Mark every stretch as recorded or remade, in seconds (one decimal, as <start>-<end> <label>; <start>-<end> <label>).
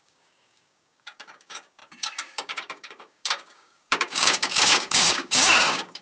0.0-6.0 remade